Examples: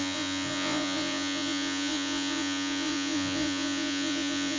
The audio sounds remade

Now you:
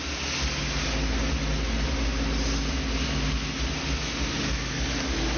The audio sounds recorded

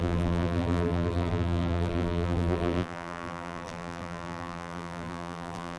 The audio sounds remade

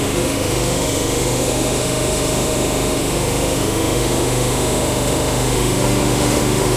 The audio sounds remade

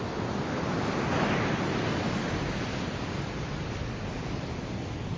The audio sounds recorded